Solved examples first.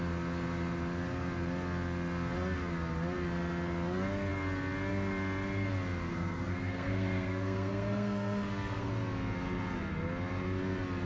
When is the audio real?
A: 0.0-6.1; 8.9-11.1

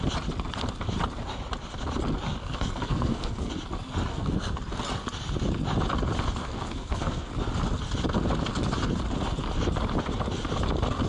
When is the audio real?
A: 0.0-2.4; 3.5-4.1; 4.6-6.4; 7.3-11.1